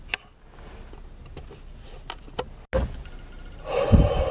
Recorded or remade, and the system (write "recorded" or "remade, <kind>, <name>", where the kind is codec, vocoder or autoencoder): recorded